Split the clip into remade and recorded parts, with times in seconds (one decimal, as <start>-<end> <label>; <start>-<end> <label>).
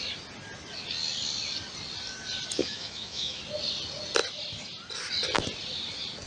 0.0-2.6 recorded; 2.6-3.4 remade; 3.4-6.3 recorded